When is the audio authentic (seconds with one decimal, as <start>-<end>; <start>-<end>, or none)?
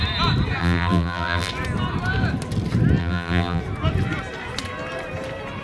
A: 0.0-0.6; 1.5-3.0; 3.6-5.6